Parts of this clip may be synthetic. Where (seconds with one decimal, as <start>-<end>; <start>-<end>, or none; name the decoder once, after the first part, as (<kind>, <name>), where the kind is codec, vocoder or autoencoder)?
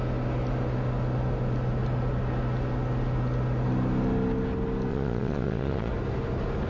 4.9-5.9 (vocoder, Vocos)